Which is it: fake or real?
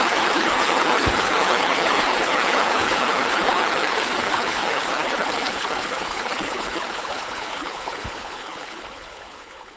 fake